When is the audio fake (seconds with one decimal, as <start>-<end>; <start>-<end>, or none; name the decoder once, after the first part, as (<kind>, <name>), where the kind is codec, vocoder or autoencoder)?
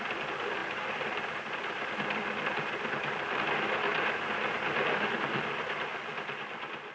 0.0-3.9 (vocoder, BigVGAN v2); 4.5-5.9; 6.4-6.9